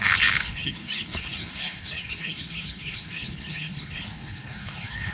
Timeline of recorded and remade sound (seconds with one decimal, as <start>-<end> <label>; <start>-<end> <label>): 0.0-5.1 remade